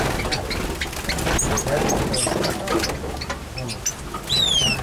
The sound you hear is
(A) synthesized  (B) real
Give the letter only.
B